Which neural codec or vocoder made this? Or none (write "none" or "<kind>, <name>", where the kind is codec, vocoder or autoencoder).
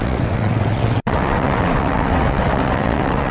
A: vocoder, WaveNeXt